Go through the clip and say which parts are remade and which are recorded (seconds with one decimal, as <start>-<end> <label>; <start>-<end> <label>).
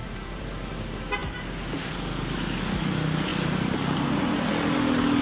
0.0-0.7 remade; 0.7-3.3 recorded; 3.3-4.5 remade; 4.5-5.2 recorded